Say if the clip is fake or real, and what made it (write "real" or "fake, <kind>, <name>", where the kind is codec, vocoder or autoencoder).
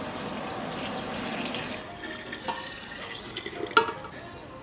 real